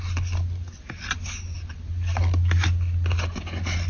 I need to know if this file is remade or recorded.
recorded